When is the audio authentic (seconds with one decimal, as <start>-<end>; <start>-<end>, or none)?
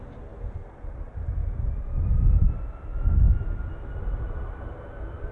2.9-4.7